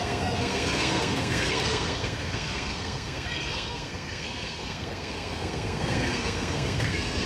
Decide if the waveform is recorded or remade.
remade